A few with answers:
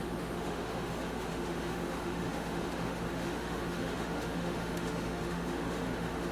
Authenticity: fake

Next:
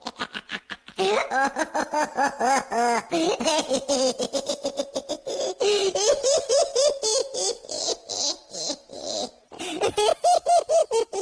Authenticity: real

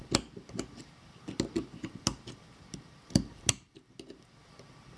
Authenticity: real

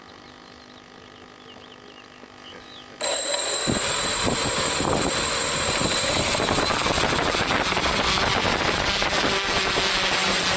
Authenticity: real